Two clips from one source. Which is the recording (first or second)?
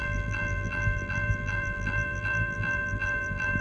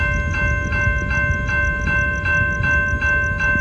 second